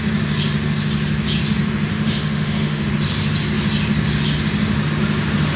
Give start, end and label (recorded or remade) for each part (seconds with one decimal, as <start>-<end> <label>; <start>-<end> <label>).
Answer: 0.0-1.9 recorded; 1.9-2.9 remade; 2.9-5.6 recorded